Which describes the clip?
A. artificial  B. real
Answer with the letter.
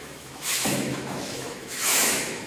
A